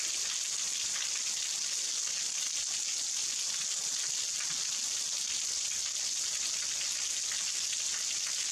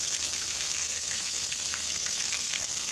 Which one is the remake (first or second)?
second